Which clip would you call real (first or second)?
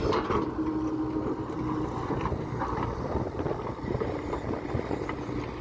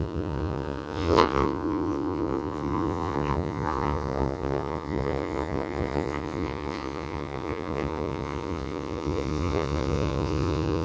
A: first